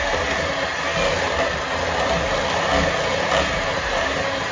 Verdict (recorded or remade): recorded